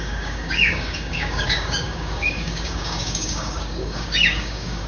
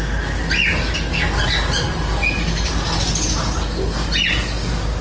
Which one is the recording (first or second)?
second